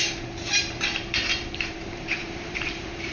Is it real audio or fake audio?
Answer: fake